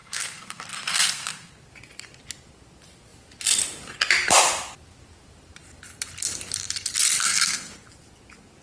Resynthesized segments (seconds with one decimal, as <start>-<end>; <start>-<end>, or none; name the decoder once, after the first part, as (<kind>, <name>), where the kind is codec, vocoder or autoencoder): 0.0-1.5 (codec, SNAC); 7.2-7.7